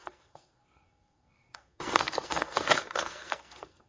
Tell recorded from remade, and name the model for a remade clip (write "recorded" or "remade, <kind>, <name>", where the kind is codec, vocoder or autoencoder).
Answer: remade, codec, SNAC